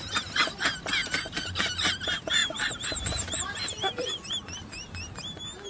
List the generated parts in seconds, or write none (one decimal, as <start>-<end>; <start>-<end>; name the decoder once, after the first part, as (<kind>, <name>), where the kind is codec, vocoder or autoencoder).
1.0-1.9 (vocoder, BigVGAN v2); 2.4-5.1